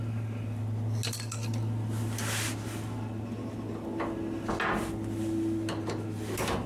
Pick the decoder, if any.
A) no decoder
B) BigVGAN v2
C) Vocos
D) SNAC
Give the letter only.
A